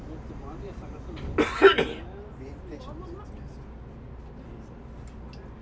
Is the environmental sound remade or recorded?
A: recorded